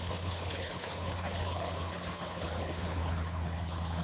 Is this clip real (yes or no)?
no